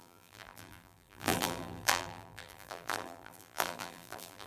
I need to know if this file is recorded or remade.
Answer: remade